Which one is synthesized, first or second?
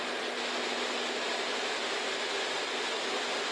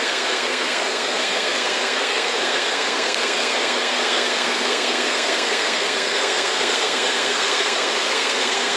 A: second